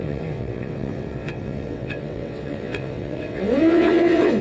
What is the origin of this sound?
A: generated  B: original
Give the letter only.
A